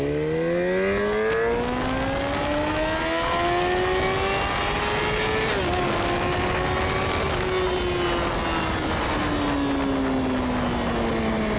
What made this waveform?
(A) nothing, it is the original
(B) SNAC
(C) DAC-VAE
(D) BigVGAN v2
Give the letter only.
A